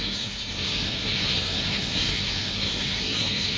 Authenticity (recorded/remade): remade